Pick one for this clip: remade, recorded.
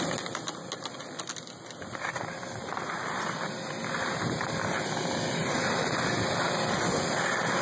recorded